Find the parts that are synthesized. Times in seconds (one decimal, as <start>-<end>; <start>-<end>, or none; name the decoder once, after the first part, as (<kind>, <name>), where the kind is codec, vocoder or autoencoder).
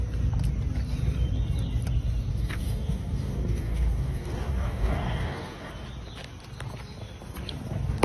2.3-5.7 (codec, DAC)